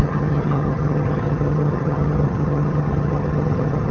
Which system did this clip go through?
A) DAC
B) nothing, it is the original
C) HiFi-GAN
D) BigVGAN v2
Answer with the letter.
C